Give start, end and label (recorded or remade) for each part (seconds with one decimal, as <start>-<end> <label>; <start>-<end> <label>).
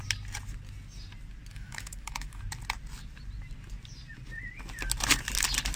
0.0-1.5 recorded; 1.5-2.4 remade; 2.4-5.8 recorded